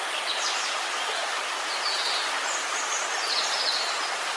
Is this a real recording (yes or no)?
yes